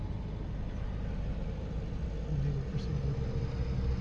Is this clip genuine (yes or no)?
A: yes